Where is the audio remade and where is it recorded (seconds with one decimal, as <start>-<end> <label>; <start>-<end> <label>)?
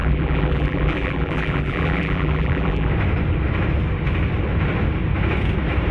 0.0-2.9 remade; 2.9-5.9 recorded